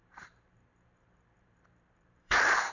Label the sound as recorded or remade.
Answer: remade